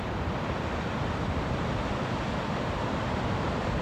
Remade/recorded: recorded